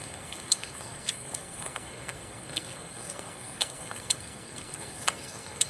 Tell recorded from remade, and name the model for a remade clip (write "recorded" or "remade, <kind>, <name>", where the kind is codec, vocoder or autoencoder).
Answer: remade, codec, SNAC